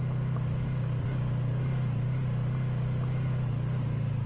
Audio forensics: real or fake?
real